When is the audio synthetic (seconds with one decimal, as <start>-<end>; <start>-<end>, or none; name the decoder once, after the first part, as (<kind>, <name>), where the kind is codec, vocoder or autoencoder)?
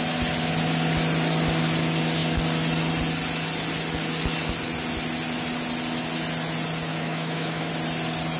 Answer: 6.9-7.7 (autoencoder, DAC-VAE)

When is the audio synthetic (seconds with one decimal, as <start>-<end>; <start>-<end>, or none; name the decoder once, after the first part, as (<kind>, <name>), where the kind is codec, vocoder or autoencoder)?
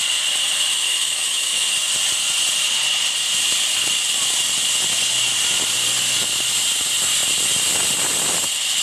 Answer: 0.7-1.7 (autoencoder, DAC-VAE)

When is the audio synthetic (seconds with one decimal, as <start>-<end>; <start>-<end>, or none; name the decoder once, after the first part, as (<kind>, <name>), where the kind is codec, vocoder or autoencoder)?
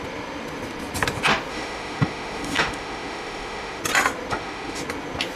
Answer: 1.5-3.8 (autoencoder, DAC-VAE); 4.3-4.8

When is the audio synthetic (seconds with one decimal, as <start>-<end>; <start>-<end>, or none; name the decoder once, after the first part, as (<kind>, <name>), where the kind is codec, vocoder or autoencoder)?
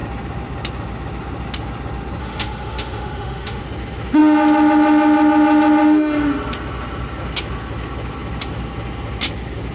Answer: 2.2-3.6 (autoencoder, DAC-VAE)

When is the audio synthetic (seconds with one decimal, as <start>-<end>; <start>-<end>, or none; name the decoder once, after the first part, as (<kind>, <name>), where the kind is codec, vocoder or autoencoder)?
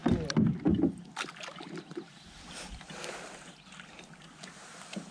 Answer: none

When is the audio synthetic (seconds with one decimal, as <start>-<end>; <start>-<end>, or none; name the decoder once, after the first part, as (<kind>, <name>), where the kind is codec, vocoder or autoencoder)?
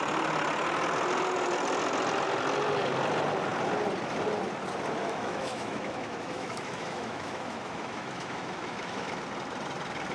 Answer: 5.0-9.1 (autoencoder, DAC-VAE)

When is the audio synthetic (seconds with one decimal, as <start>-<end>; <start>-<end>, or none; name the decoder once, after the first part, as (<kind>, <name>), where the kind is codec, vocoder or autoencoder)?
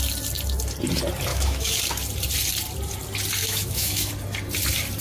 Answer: 1.3-1.8 (autoencoder, DAC-VAE); 3.4-4.1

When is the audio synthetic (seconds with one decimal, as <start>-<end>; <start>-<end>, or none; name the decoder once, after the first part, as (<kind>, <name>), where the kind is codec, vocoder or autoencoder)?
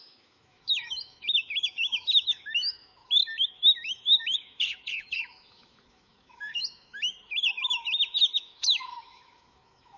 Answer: 0.0-10.0 (autoencoder, DAC-VAE)